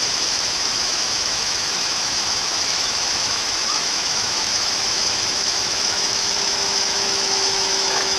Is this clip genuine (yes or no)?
no